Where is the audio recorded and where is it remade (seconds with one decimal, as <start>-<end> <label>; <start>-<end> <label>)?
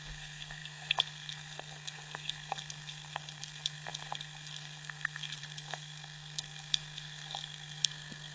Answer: 0.0-8.3 remade